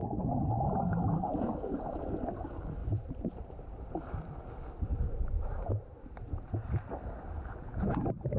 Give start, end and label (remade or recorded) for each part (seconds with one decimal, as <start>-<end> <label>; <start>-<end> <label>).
0.0-2.8 recorded; 2.8-4.0 remade; 4.0-4.9 recorded; 4.9-6.9 remade; 6.9-8.4 recorded

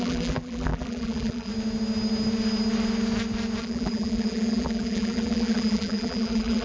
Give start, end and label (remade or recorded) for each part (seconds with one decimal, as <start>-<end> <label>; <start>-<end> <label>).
0.0-1.5 remade; 1.5-3.6 recorded; 3.6-6.6 remade